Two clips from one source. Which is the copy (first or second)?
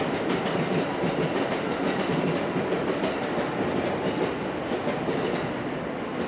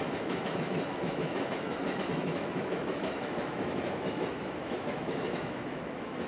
second